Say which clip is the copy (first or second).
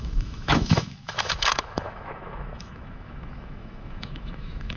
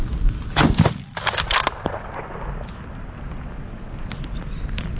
first